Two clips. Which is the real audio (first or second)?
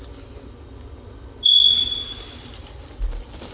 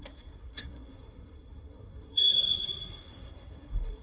first